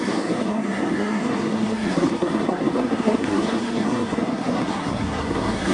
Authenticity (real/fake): fake